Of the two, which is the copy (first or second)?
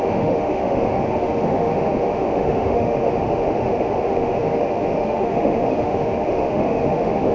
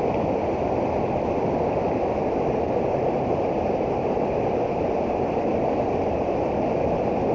first